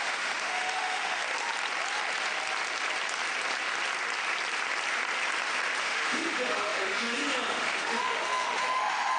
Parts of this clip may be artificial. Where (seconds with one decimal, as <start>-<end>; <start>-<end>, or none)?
0.0-1.2; 5.8-9.2